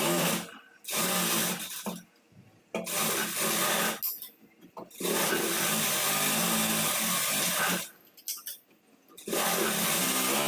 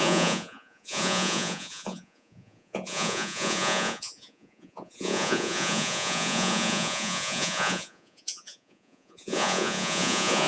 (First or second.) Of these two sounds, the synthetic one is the second